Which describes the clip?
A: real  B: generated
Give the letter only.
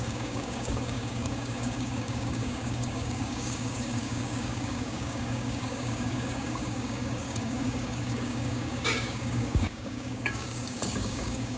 B